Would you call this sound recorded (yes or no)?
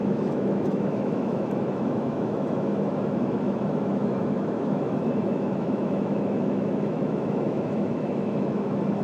no